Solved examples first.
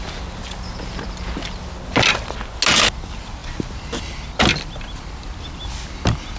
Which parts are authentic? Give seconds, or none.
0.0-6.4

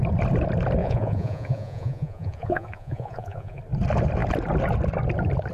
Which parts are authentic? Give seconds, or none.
0.0-0.8; 3.6-5.5